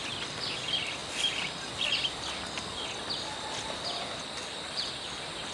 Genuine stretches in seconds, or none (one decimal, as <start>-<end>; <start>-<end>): 0.0-5.5